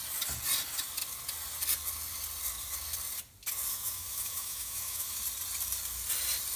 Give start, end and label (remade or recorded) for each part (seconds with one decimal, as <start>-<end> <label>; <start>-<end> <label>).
0.0-3.7 recorded; 3.7-5.2 remade; 5.2-6.6 recorded